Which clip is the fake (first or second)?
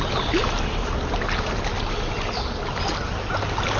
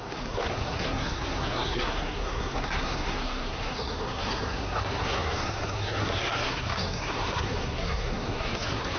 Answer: second